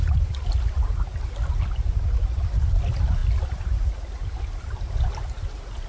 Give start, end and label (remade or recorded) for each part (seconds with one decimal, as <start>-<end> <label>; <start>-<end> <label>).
0.0-5.9 recorded